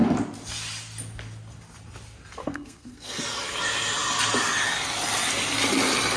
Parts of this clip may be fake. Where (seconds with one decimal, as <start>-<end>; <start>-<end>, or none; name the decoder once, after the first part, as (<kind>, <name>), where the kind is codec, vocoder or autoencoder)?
2.4-3.2 (codec, SNAC)